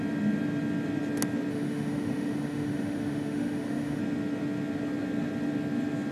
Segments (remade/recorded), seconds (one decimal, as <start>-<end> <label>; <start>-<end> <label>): 0.0-1.5 recorded; 1.5-4.0 remade; 4.0-6.1 recorded